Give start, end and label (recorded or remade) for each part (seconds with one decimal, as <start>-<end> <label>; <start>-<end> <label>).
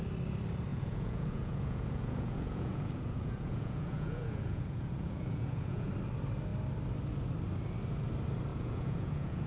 0.0-0.7 recorded; 0.7-5.9 remade; 5.9-8.5 recorded; 8.5-9.5 remade